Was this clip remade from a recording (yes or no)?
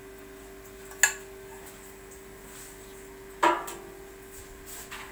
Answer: no